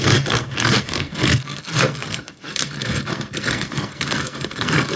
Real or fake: fake